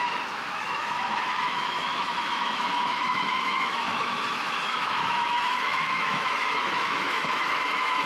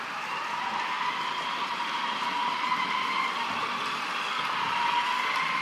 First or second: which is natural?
second